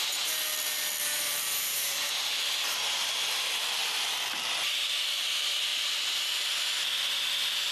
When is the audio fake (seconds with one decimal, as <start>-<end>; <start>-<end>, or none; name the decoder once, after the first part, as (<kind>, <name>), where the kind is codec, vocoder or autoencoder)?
0.0-5.7 (vocoder, BigVGAN v2)